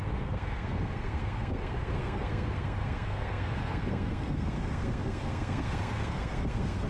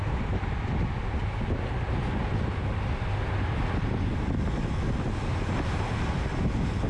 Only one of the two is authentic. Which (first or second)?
second